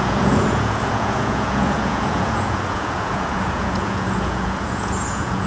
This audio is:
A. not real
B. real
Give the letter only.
A